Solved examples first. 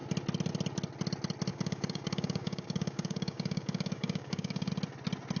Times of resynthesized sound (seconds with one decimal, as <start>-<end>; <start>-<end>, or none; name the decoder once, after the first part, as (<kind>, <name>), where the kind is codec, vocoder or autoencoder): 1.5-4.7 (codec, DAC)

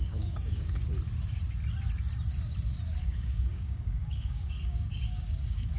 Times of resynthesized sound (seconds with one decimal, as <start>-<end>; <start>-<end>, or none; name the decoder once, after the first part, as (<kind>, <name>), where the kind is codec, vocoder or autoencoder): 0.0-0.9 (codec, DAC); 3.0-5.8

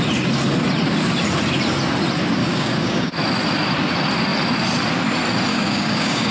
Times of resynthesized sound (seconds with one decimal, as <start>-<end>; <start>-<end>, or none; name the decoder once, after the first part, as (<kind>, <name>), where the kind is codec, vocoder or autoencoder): 2.4-3.1 (codec, DAC); 5.5-6.3